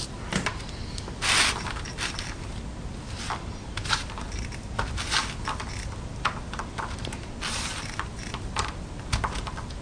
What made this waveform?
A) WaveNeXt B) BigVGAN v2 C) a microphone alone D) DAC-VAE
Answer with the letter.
C